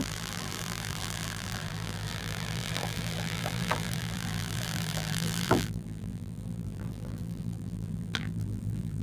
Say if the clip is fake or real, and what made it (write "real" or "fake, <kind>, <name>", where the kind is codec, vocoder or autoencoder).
fake, vocoder, BigVGAN v2